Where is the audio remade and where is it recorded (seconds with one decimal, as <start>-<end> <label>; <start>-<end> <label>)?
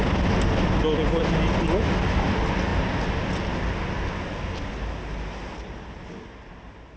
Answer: 0.0-7.0 recorded